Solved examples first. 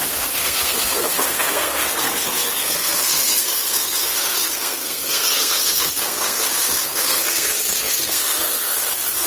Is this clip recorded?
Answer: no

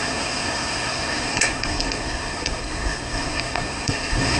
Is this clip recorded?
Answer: no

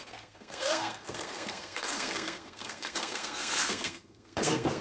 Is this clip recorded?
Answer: no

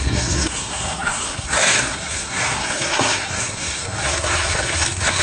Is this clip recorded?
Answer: no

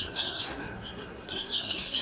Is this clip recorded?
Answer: no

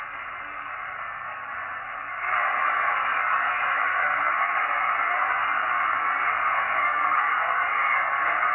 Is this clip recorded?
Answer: no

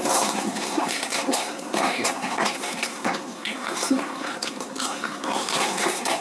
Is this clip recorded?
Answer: no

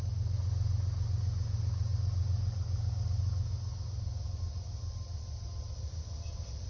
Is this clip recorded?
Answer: yes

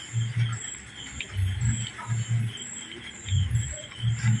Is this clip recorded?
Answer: yes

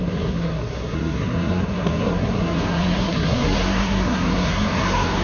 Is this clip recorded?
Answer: no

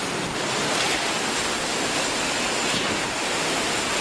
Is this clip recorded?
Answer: yes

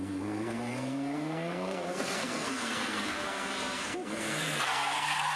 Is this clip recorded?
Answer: no